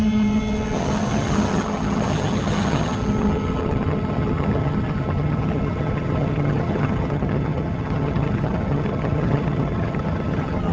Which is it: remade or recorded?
remade